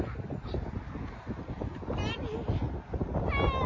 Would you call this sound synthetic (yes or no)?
no